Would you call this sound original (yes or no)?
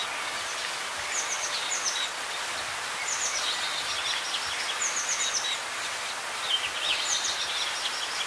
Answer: yes